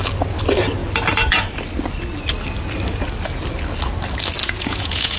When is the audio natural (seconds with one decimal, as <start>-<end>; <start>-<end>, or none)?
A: 0.0-4.4